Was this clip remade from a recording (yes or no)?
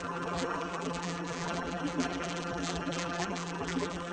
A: yes